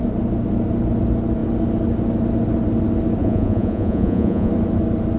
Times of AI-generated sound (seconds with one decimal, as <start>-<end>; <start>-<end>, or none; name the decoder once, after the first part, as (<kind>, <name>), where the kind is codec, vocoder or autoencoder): 3.2-4.5 (vocoder, Vocos)